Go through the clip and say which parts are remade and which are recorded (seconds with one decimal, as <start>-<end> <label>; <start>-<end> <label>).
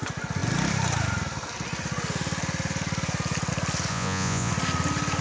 0.0-3.9 recorded; 3.9-4.5 remade; 4.5-5.2 recorded